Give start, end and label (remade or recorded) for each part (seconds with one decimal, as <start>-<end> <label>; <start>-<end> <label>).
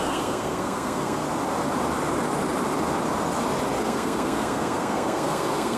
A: 0.0-1.2 remade; 1.2-3.8 recorded; 3.8-5.8 remade